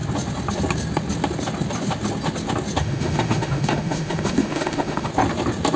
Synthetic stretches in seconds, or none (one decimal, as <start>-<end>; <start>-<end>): 2.8-5.1